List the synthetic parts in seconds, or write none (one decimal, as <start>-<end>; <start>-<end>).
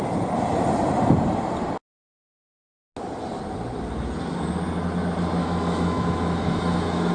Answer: 5.4-7.1